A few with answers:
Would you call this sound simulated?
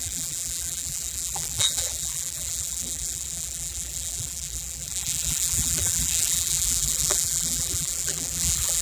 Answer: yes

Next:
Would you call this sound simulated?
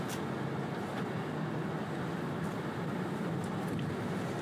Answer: no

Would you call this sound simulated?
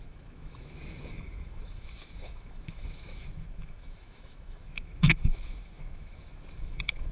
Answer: yes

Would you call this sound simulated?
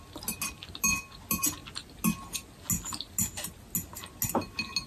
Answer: no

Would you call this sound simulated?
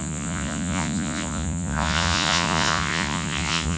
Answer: yes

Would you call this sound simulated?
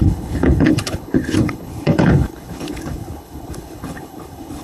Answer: yes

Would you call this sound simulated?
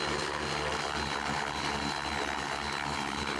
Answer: no